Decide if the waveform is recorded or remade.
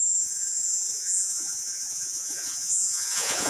remade